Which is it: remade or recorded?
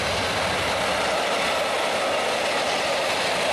recorded